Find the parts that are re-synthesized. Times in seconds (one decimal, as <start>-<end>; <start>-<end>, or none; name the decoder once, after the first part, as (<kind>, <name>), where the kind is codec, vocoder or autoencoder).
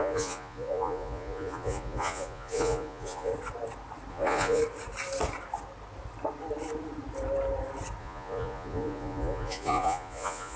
0.0-3.3 (vocoder, Vocos); 4.1-4.6; 8.0-10.6